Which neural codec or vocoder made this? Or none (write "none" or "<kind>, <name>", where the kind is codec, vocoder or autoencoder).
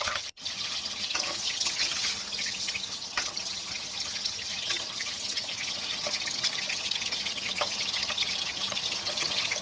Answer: vocoder, HiFi-GAN